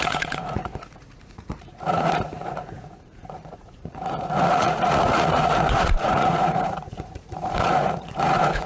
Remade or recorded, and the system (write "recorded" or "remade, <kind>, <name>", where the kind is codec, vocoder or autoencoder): remade, vocoder, Vocos